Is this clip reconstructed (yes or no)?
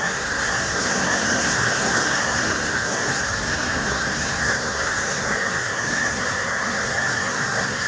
yes